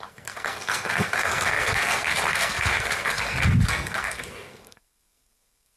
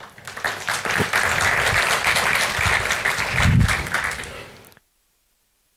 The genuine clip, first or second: second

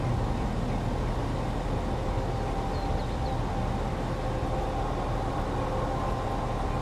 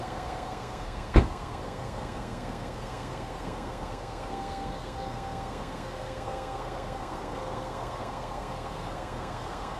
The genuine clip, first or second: first